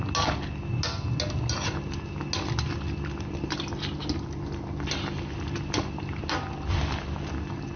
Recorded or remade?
recorded